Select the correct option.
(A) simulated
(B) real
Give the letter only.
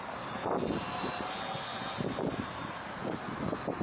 B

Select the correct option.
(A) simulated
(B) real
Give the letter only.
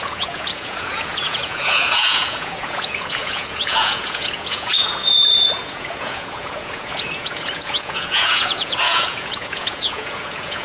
A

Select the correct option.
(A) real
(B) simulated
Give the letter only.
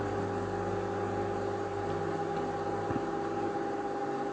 A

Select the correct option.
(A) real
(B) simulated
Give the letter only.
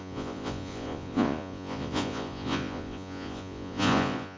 B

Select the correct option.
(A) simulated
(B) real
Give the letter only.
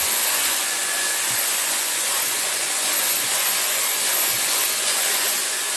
A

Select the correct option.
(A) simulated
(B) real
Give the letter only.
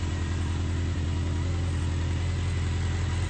B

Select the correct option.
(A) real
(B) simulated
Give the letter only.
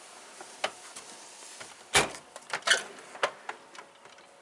A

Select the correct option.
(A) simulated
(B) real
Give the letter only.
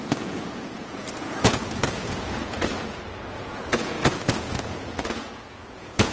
A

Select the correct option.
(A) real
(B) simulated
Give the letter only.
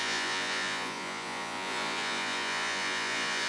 B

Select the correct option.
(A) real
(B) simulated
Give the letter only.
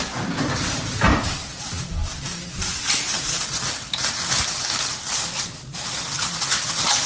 A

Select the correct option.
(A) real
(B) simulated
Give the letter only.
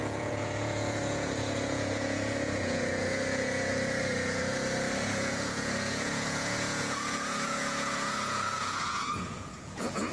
B